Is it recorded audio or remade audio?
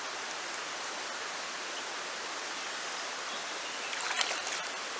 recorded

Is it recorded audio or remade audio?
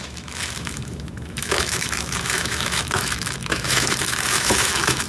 remade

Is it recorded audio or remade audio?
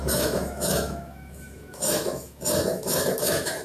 remade